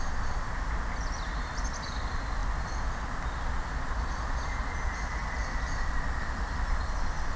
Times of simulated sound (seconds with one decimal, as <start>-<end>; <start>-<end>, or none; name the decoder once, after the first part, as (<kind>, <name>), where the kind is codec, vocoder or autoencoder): none